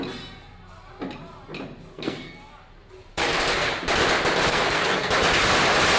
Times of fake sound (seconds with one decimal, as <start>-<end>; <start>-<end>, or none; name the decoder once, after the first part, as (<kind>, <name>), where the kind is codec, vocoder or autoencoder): 1.9-2.5 (codec, SNAC); 3.1-3.7; 4.5-5.1